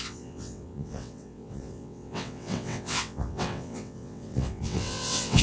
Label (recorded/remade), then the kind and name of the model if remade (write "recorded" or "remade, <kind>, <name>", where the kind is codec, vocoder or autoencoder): remade, vocoder, WaveNeXt